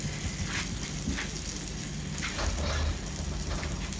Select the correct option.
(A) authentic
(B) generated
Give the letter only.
A